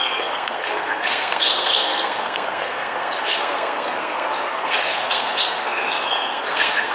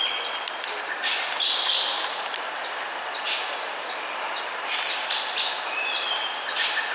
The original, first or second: second